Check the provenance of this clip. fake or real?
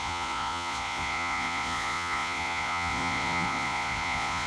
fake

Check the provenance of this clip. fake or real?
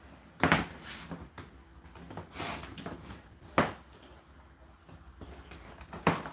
real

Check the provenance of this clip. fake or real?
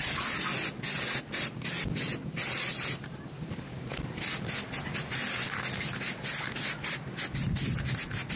real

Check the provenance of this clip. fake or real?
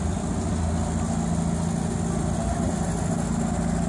real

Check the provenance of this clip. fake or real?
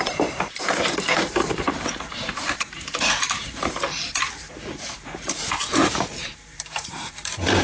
fake